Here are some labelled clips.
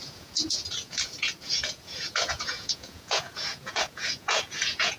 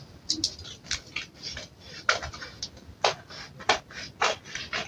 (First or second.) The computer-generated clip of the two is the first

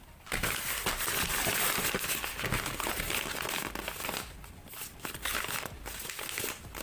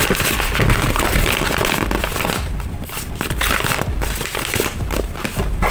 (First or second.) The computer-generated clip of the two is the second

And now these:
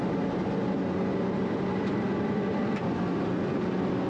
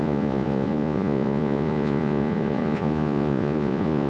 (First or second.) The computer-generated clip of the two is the second